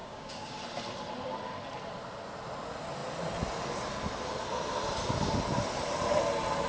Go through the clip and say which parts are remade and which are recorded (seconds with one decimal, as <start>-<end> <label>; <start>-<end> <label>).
0.0-0.6 remade; 0.6-6.7 recorded